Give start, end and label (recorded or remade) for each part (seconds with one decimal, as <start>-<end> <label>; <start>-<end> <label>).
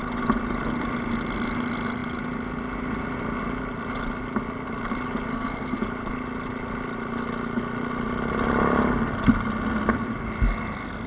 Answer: 0.0-5.3 recorded; 5.3-5.8 remade; 5.8-11.1 recorded